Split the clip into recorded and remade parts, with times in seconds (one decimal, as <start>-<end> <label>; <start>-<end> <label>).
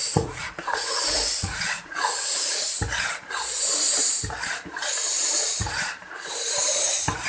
0.0-2.5 remade; 2.5-5.4 recorded; 5.4-5.9 remade; 5.9-7.3 recorded